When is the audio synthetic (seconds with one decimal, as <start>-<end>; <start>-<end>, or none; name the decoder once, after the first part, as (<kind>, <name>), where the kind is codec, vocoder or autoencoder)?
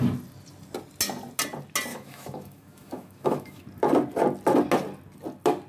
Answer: 1.9-3.6 (autoencoder, DAC-VAE)